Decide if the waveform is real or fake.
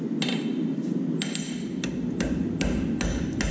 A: real